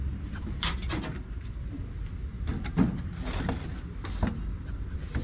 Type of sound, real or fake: real